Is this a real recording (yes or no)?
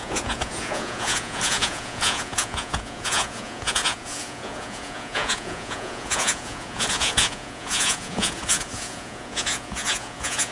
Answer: no